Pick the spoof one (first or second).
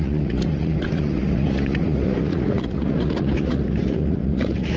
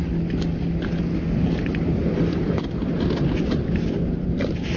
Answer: first